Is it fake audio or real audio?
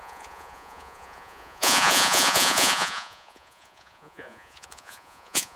fake